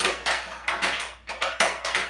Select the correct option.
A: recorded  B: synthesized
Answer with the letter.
B